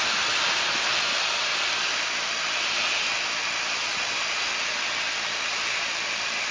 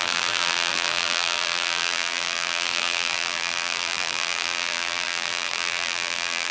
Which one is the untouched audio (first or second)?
first